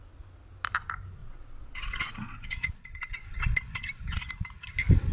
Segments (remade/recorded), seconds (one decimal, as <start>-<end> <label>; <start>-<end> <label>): 0.0-1.2 recorded; 1.2-4.3 remade; 4.3-5.1 recorded

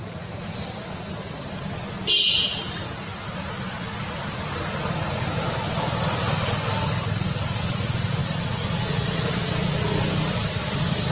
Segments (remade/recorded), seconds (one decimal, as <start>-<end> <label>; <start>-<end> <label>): 0.0-8.2 recorded; 8.2-9.3 remade; 9.3-11.1 recorded

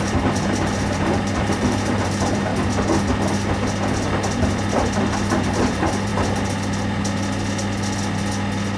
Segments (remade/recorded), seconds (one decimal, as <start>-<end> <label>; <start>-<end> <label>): 0.0-2.5 remade; 2.5-5.5 recorded; 5.5-6.1 remade; 6.1-8.8 recorded

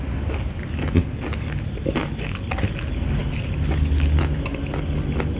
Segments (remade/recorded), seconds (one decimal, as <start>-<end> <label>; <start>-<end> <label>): 0.0-5.4 recorded

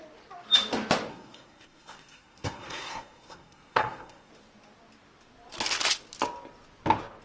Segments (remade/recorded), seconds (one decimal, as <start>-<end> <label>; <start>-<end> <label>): 0.0-1.1 recorded; 1.1-4.3 remade; 4.3-7.2 recorded

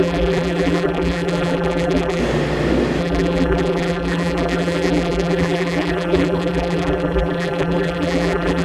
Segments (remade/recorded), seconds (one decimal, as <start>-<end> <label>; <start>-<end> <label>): 0.0-2.2 remade; 2.2-3.0 recorded; 3.0-8.6 remade

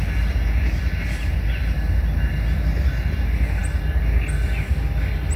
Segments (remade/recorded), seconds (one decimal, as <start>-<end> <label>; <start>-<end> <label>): 0.0-5.4 recorded

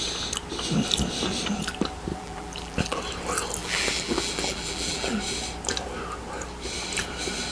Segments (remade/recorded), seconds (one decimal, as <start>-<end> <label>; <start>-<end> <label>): 0.0-2.1 recorded; 2.1-3.0 remade; 3.0-3.6 recorded; 3.6-5.2 remade; 5.2-7.5 recorded